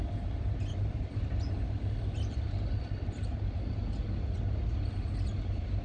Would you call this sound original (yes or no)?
yes